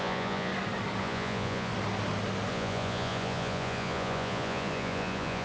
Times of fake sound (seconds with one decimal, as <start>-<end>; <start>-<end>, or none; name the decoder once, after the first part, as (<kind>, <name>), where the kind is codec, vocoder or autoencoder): 0.0-0.5 (vocoder, Vocos); 1.0-1.7; 2.5-5.4